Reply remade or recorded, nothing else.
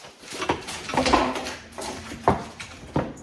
remade